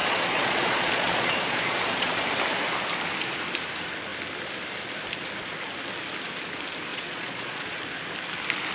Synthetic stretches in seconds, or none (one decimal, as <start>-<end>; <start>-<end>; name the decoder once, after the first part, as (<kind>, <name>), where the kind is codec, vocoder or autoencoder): 0.0-2.2 (vocoder, Vocos); 6.9-7.8